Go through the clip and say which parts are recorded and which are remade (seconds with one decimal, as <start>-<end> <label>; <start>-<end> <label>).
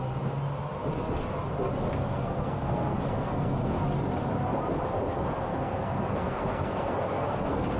0.0-2.1 recorded; 2.1-3.8 remade; 3.8-5.5 recorded; 5.5-7.8 remade